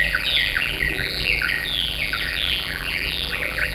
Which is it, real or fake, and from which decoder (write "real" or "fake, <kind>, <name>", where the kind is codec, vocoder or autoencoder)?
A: fake, vocoder, BigVGAN v2